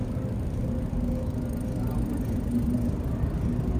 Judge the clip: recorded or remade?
recorded